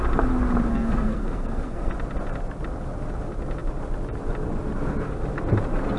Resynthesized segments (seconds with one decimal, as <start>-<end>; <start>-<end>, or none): 0.7-1.9